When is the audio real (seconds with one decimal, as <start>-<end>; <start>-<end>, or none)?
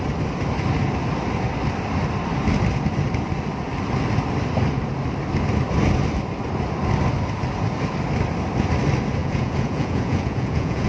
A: 0.0-9.2